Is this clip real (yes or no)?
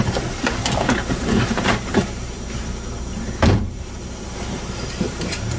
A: no